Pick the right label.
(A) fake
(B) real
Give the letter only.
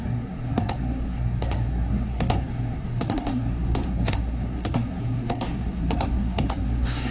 A